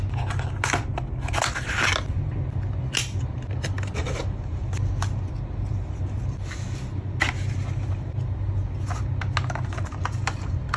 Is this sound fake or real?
real